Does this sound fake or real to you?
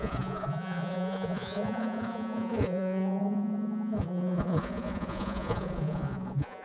fake